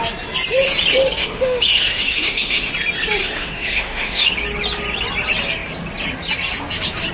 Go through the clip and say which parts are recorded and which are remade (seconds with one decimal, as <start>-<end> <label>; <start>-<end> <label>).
0.0-1.2 recorded; 1.2-2.7 remade; 2.7-3.2 recorded; 3.2-4.3 remade; 4.3-7.1 recorded